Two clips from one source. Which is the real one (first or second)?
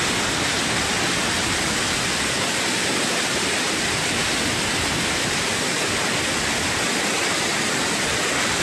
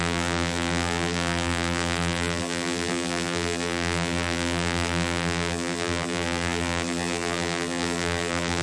first